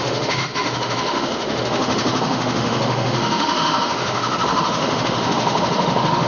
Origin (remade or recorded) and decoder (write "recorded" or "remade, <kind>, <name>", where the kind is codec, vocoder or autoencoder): remade, autoencoder, DAC-VAE